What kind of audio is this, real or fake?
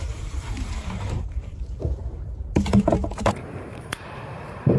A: fake